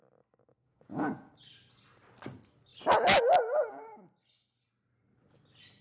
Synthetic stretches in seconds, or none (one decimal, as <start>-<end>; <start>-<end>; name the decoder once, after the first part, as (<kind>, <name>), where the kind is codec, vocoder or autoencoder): 0.5-1.3 (vocoder, Vocos)